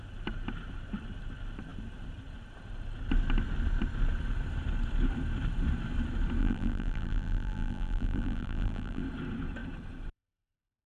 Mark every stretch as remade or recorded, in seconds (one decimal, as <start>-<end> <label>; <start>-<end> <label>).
0.0-6.4 recorded; 6.4-9.0 remade; 9.0-10.9 recorded